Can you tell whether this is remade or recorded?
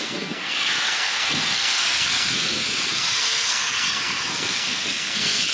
remade